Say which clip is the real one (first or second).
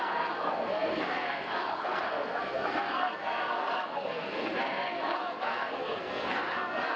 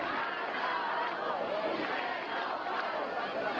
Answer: second